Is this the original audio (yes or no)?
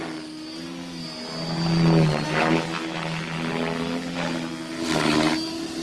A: yes